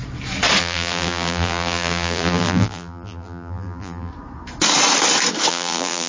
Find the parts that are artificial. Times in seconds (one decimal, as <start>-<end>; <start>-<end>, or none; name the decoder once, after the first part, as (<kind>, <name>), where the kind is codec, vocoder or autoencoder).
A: 0.6-4.1 (vocoder, BigVGAN v2); 5.5-6.1